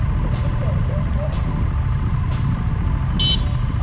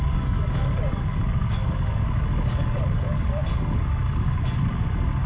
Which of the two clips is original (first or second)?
first